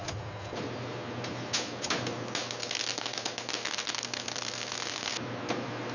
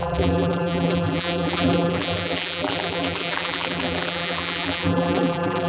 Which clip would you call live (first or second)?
first